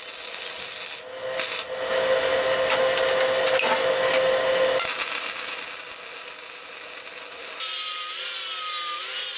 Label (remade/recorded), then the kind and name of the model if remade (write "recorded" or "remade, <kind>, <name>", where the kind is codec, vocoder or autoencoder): recorded